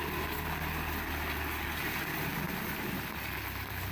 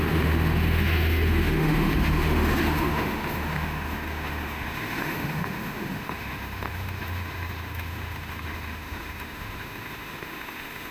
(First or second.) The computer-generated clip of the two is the second